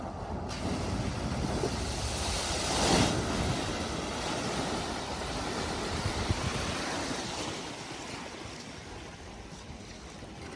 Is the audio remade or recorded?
recorded